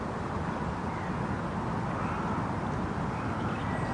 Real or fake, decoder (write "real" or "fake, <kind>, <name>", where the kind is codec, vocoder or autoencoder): real